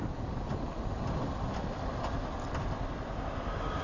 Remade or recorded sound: recorded